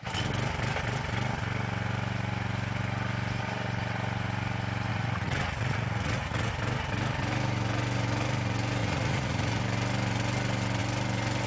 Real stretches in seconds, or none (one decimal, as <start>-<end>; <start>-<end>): 0.0-4.9; 6.5-8.8; 9.6-11.5